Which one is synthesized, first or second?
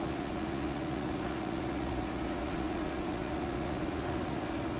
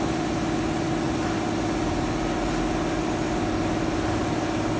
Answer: first